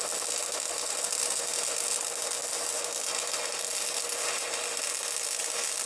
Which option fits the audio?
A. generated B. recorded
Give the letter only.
B